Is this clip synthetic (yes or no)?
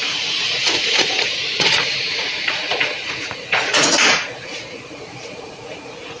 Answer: yes